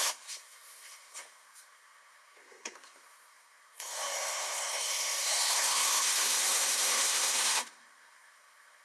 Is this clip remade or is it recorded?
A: remade